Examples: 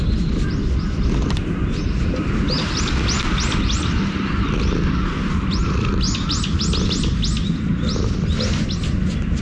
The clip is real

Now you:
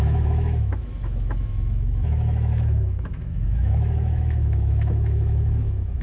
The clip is fake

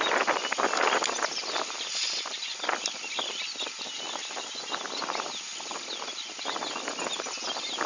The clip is real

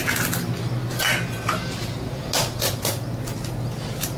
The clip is real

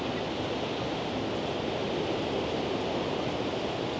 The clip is real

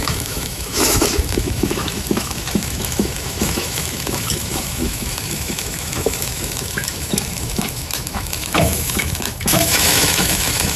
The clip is fake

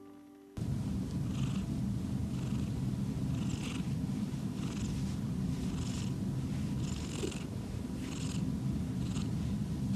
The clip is real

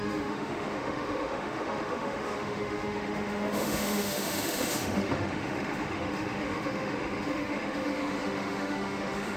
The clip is fake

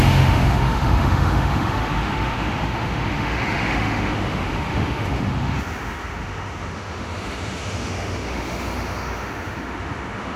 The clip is fake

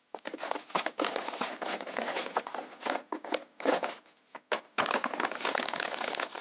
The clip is real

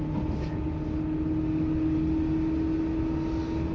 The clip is real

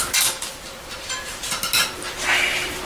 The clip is real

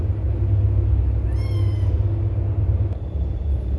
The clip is real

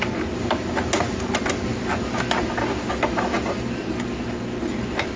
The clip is real